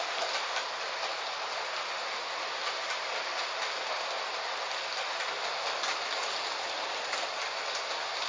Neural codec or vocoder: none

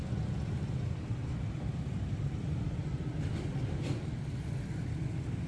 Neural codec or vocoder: none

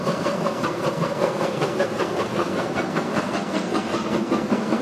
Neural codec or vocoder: codec, SNAC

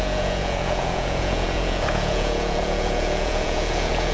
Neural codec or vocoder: vocoder, Vocos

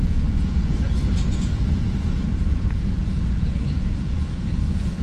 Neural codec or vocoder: vocoder, Vocos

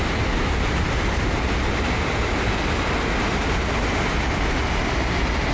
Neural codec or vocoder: none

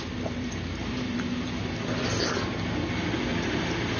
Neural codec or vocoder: none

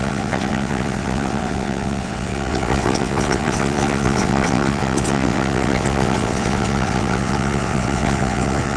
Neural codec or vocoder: vocoder, WaveNeXt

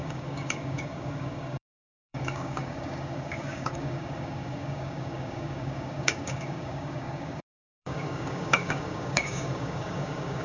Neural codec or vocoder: codec, DAC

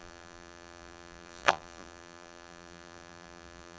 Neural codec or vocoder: vocoder, BigVGAN v2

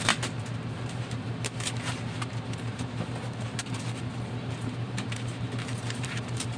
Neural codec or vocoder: vocoder, BigVGAN v2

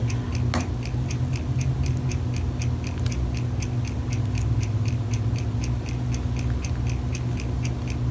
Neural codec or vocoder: none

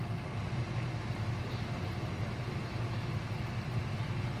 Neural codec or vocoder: none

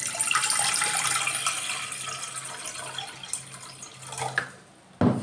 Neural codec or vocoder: none